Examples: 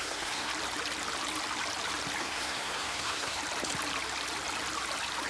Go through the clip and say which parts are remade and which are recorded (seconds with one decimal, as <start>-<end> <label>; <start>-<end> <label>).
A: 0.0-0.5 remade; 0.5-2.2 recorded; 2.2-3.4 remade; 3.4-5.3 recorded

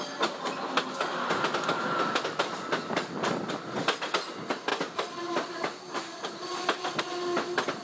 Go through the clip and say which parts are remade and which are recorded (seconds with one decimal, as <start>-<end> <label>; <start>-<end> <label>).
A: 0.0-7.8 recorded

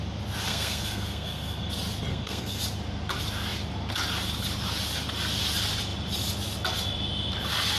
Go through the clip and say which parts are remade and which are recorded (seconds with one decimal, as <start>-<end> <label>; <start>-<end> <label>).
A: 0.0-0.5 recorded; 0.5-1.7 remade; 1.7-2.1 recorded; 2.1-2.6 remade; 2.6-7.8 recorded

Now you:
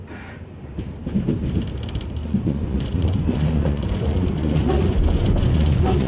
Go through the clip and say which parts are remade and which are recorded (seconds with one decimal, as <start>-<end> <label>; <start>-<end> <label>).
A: 0.0-2.2 recorded; 2.2-6.1 remade

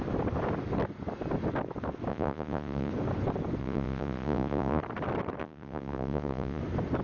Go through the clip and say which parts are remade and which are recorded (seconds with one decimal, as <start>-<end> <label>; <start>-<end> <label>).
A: 0.0-2.1 recorded; 2.1-2.9 remade; 2.9-3.6 recorded; 3.6-4.8 remade; 4.8-5.4 recorded; 5.4-6.6 remade; 6.6-7.0 recorded

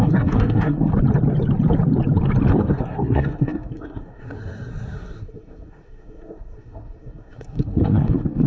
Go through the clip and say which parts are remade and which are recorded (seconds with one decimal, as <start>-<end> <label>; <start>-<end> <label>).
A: 0.0-0.9 remade; 0.9-2.5 recorded; 2.5-8.5 remade